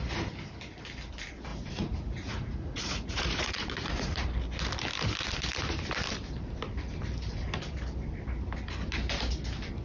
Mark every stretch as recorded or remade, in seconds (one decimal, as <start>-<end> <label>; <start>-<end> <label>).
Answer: 0.0-1.5 recorded; 1.5-4.3 remade; 4.3-9.8 recorded